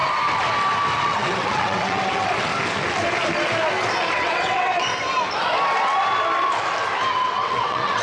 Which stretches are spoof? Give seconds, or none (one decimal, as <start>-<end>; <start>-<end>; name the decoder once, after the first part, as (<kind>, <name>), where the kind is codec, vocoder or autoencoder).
1.0-2.5 (vocoder, WaveNeXt); 4.1-4.9; 7.1-8.0